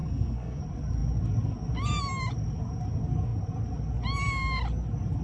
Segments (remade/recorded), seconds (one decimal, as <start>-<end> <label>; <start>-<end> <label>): 0.0-0.6 remade; 0.6-5.2 recorded